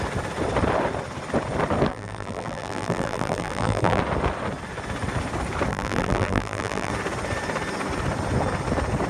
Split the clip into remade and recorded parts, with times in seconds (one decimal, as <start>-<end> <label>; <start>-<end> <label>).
0.0-1.9 recorded; 1.9-4.0 remade; 4.0-5.7 recorded; 5.7-6.9 remade; 6.9-9.1 recorded